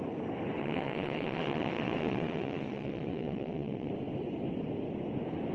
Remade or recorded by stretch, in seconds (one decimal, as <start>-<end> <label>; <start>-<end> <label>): 0.0-0.6 recorded; 0.6-3.9 remade; 3.9-5.5 recorded